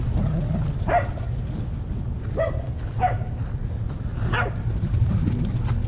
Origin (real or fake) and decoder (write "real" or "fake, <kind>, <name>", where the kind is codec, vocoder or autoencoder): real